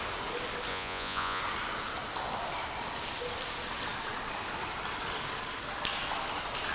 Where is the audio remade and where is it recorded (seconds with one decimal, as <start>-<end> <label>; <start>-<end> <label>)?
0.0-0.7 recorded; 0.7-1.4 remade; 1.4-6.7 recorded